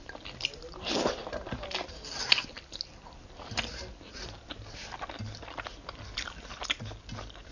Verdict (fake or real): real